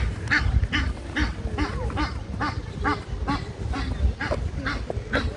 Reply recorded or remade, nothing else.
recorded